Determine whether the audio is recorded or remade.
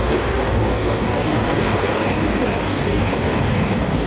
remade